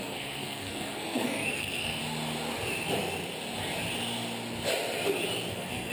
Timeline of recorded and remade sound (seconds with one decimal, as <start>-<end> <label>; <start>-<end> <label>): 0.0-2.0 remade; 2.0-5.5 recorded; 5.5-5.9 remade